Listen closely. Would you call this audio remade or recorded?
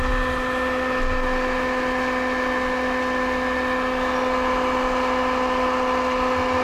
recorded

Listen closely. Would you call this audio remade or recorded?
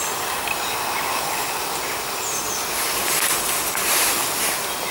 recorded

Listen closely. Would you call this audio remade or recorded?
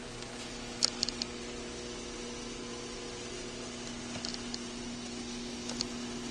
recorded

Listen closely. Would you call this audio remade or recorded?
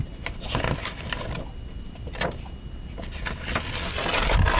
recorded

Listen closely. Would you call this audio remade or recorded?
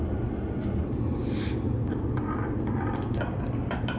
recorded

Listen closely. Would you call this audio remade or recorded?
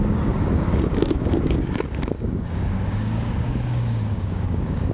remade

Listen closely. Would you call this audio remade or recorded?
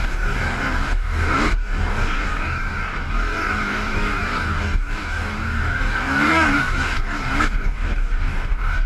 remade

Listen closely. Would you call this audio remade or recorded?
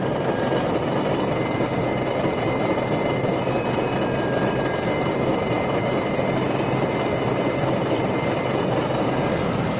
recorded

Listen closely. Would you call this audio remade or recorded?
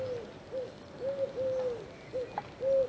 recorded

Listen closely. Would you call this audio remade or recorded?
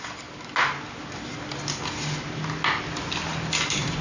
recorded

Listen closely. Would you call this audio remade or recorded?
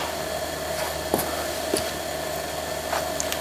recorded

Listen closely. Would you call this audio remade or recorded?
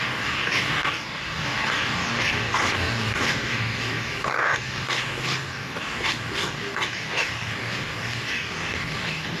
remade